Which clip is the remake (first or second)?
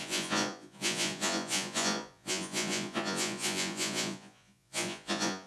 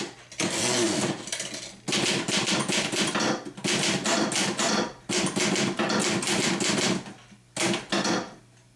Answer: first